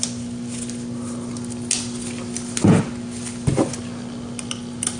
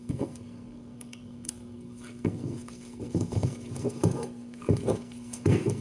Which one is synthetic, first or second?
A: second